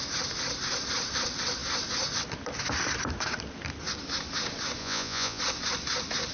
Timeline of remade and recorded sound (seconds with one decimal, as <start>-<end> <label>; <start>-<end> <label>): 0.0-4.8 recorded; 4.8-5.4 remade; 5.4-6.3 recorded